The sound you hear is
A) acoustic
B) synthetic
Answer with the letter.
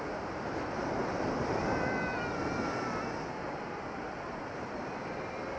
A